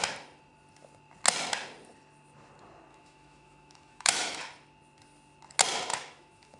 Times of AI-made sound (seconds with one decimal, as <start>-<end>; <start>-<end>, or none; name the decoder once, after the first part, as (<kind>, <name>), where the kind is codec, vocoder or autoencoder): 2.9-4.4 (autoencoder, DAC-VAE); 5.9-6.6